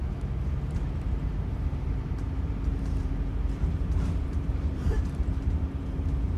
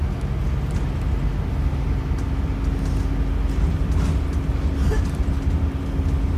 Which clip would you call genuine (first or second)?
second